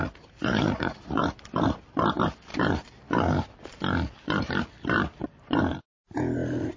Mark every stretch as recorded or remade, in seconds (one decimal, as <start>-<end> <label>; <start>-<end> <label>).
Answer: 0.0-1.2 remade; 1.2-6.8 recorded